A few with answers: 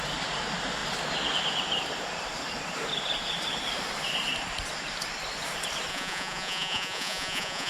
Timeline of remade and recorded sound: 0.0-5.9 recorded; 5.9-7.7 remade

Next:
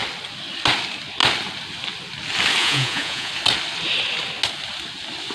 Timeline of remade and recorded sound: 0.0-2.6 recorded; 2.6-3.3 remade; 3.3-5.3 recorded